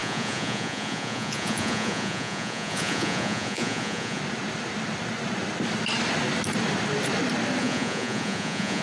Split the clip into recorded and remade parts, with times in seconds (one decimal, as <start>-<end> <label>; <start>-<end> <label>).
0.0-4.2 remade; 4.2-7.6 recorded; 7.6-8.8 remade